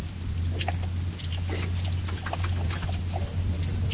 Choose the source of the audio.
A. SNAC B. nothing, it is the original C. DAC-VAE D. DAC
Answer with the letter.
B